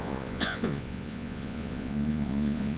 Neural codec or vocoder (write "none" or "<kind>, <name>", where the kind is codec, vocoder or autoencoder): vocoder, Vocos